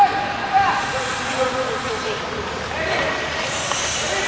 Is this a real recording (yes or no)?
yes